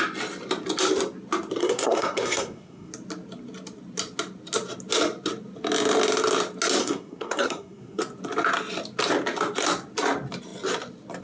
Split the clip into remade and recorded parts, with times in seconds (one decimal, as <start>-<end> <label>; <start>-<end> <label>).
0.0-1.6 recorded; 1.6-2.9 remade; 2.9-6.8 recorded; 6.8-8.0 remade; 8.0-11.2 recorded